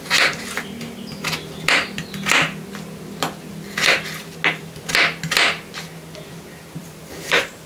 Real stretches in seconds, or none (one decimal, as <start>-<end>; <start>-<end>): 0.0-6.8